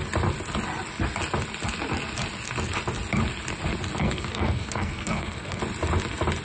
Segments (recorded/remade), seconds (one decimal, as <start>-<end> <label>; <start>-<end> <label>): 0.0-4.0 recorded; 4.0-5.6 remade; 5.6-6.4 recorded